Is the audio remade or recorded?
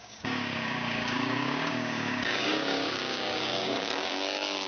remade